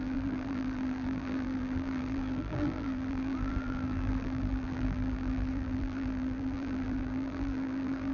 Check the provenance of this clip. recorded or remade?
remade